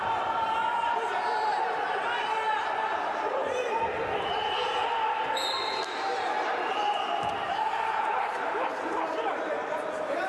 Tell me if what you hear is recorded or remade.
remade